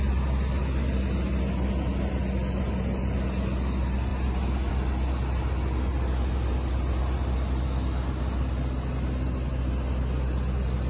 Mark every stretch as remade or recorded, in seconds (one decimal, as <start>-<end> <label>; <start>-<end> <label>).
0.0-10.9 recorded